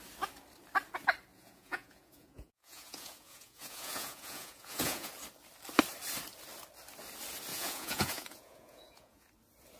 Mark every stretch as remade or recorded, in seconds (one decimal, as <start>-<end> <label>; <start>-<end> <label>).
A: 0.0-1.3 recorded; 1.3-5.1 remade; 5.1-7.5 recorded; 7.5-9.3 remade; 9.3-9.8 recorded